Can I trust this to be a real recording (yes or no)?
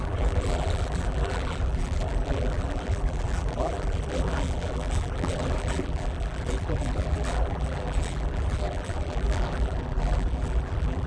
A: no